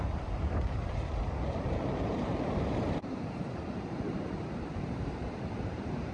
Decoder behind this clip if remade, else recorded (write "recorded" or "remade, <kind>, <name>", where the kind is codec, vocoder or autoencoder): remade, vocoder, BigVGAN v2